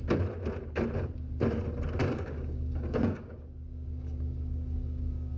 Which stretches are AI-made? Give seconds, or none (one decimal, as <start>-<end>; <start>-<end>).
2.0-5.4